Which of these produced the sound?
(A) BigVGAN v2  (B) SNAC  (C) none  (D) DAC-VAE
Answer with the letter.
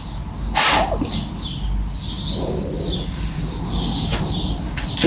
C